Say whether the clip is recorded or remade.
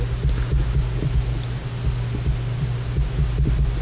recorded